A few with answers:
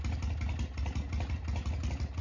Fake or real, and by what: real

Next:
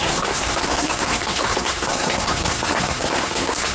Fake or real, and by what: fake, codec, SNAC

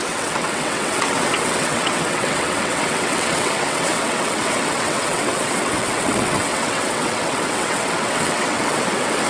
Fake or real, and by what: fake, vocoder, WaveNeXt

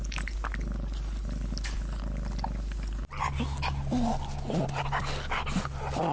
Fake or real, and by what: real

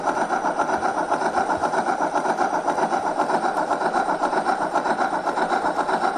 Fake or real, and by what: real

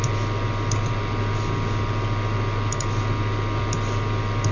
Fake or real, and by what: real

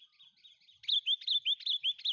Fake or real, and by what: real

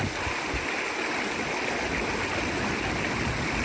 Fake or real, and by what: real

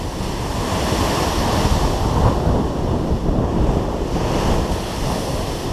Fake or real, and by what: real